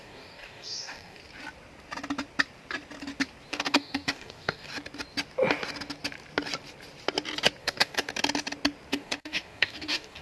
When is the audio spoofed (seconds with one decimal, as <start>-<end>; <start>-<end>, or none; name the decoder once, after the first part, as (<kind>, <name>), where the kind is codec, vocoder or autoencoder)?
0.0-1.2 (codec, DAC); 3.5-4.7; 7.6-8.1; 8.9-10.2